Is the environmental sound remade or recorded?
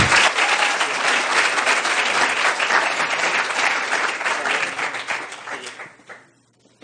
remade